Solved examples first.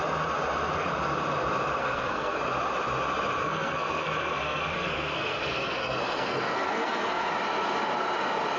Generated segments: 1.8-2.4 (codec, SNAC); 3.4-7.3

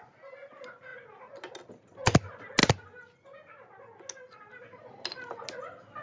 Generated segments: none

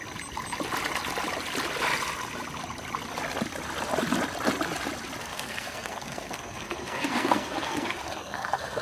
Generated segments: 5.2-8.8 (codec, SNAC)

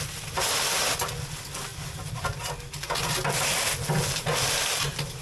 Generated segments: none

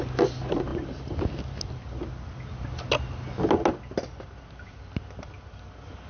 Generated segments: none

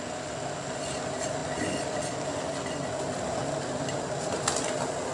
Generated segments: none